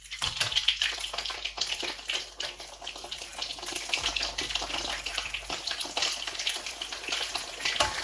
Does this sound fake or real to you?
fake